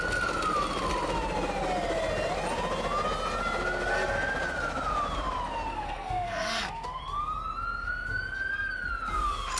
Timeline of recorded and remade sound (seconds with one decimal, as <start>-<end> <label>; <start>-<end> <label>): 0.0-5.7 recorded; 5.7-7.0 remade; 7.0-9.6 recorded